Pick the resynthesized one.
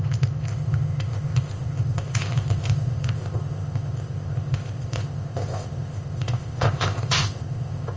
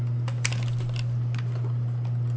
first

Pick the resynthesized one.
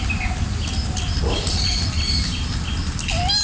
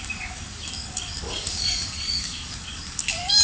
second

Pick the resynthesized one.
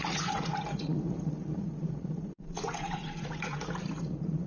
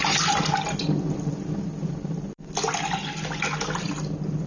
first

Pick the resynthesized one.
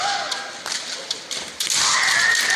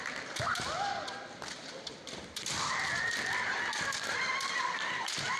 second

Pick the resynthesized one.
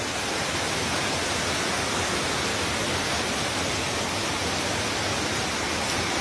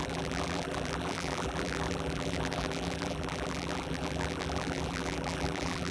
second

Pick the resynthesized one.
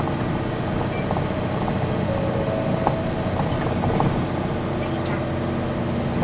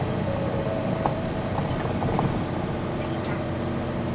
second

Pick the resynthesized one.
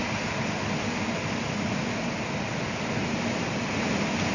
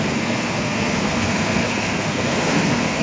second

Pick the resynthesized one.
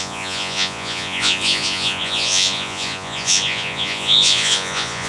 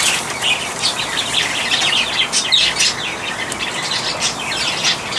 first